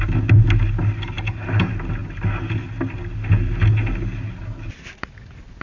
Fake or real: real